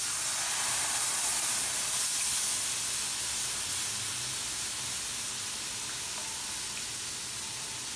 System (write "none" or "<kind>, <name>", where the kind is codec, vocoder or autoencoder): none